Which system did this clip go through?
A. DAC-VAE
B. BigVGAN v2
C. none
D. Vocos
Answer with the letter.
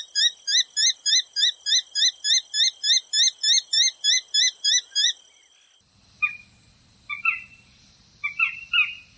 C